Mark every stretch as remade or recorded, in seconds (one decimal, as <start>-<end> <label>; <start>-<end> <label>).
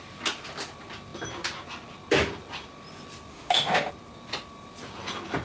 0.0-3.3 recorded; 3.3-3.9 remade; 3.9-5.4 recorded